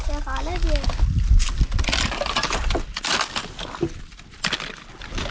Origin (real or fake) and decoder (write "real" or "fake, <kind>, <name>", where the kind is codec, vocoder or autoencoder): real